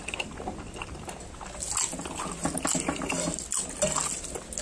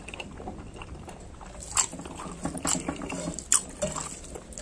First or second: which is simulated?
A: second